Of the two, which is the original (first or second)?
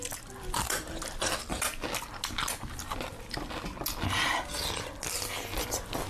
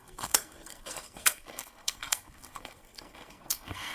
first